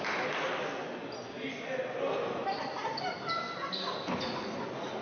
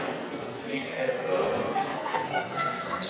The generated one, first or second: second